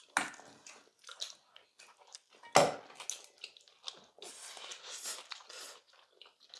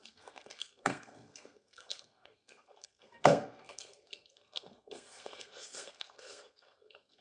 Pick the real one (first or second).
first